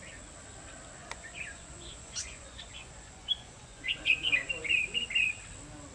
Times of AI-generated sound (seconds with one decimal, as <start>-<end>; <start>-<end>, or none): 1.0-4.5